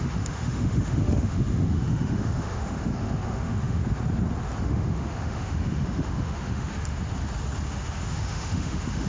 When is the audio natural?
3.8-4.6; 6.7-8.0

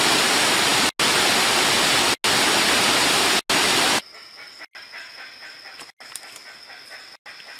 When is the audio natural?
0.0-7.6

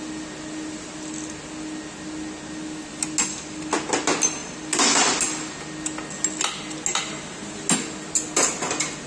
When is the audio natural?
0.0-9.1

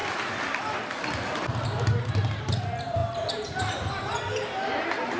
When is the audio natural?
0.0-3.0

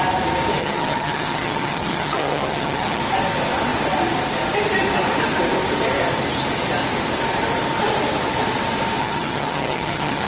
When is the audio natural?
0.0-0.6; 3.0-9.0

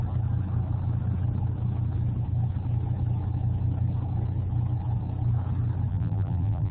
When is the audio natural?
0.0-5.9

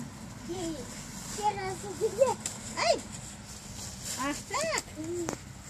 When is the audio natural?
0.0-5.7